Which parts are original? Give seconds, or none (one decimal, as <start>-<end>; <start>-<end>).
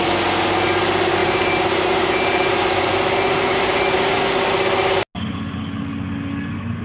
0.0-1.2; 2.9-3.5; 4.1-6.8